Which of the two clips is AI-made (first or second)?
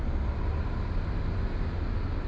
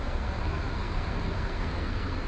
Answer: second